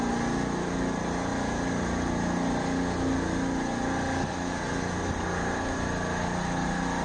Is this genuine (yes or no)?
yes